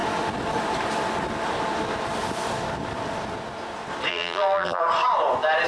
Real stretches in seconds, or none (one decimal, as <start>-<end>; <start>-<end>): 0.0-4.1; 4.8-5.7